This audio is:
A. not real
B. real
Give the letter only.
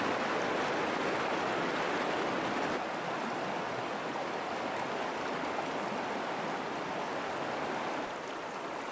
B